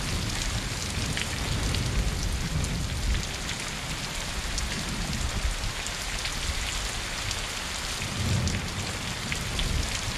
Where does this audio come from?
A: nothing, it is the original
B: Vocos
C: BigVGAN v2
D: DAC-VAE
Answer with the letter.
A